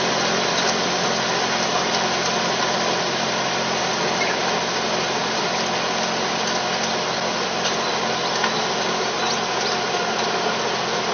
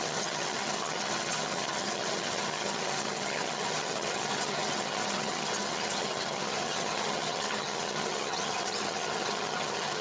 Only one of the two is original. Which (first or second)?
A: first